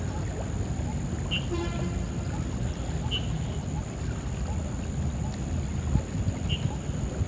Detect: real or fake real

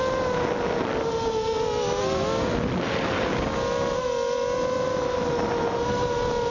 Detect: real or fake real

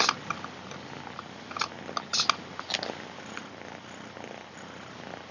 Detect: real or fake real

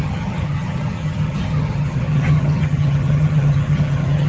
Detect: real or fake fake